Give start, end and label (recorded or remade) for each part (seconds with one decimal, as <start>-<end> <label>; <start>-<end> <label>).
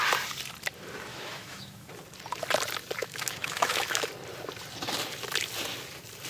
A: 0.0-1.1 recorded; 1.1-1.9 remade; 1.9-3.0 recorded; 3.0-4.1 remade; 4.1-6.3 recorded